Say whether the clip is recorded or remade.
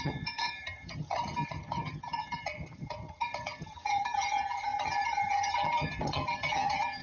remade